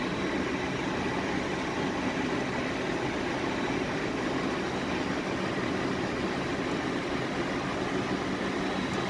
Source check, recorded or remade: recorded